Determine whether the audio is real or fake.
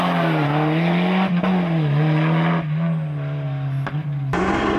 real